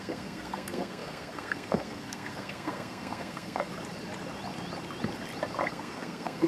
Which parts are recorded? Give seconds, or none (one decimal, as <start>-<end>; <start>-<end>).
3.7-5.7